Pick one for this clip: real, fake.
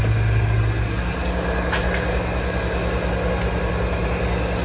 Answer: real